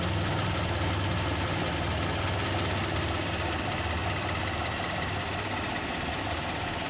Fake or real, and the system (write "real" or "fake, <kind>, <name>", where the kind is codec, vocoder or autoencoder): real